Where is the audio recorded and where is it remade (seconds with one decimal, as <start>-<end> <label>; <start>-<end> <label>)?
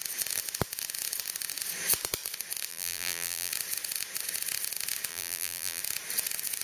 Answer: 0.0-2.7 recorded; 2.7-3.5 remade; 3.5-5.1 recorded; 5.1-5.8 remade; 5.8-6.6 recorded